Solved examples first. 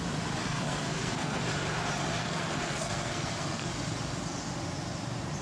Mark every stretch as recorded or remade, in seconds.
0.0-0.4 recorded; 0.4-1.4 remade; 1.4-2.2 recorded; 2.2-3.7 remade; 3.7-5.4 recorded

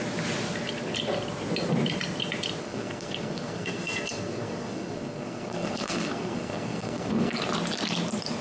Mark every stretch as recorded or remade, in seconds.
0.0-2.6 recorded; 2.6-7.4 remade; 7.4-8.4 recorded

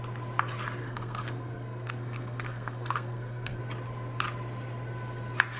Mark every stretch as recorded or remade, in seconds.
0.0-0.8 recorded; 0.8-3.6 remade; 3.6-5.6 recorded